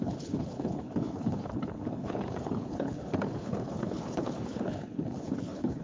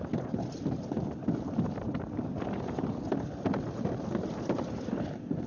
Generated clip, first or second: first